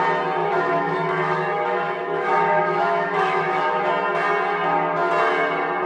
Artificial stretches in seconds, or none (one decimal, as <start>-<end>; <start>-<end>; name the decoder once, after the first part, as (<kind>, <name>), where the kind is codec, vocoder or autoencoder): 0.4-3.9 (autoencoder, DAC-VAE)